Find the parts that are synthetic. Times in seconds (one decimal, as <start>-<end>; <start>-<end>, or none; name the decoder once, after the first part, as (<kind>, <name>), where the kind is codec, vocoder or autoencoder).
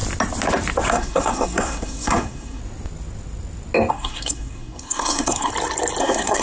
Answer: 0.9-2.6 (codec, SNAC); 3.9-5.5; 6.0-6.4